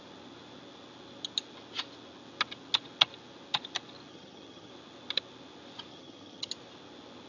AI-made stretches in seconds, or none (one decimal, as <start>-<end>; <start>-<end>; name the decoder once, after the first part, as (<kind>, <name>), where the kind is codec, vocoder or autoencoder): 4.1-4.7 (vocoder, HiFi-GAN); 5.9-6.5